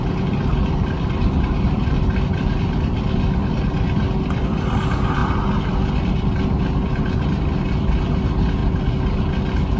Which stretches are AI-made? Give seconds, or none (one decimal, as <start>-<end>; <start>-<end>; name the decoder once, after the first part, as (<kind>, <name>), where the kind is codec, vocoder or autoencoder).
0.0-5.2 (vocoder, BigVGAN v2); 6.0-8.6